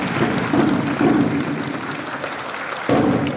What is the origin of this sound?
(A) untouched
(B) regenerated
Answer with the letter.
A